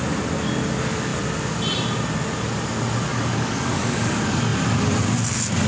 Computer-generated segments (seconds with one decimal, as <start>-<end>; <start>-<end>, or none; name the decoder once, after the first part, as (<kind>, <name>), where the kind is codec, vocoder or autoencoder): 3.1-4.1 (codec, DAC)

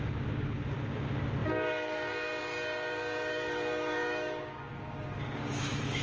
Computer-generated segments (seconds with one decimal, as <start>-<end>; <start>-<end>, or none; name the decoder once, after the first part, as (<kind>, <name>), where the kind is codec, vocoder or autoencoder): 0.0-6.0 (codec, DAC)

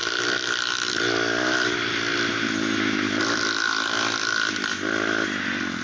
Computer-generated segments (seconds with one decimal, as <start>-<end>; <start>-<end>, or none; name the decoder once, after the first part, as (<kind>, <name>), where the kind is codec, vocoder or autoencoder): none

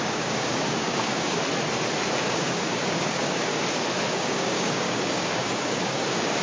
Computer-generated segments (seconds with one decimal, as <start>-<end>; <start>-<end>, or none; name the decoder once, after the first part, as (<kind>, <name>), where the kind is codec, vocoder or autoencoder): 0.0-1.4 (codec, DAC); 2.2-3.5; 4.1-6.4

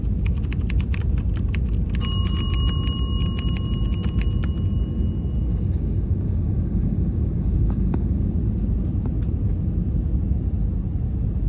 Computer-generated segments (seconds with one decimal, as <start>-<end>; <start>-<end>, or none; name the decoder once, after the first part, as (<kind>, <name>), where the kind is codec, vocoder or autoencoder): 5.5-8.3 (codec, DAC)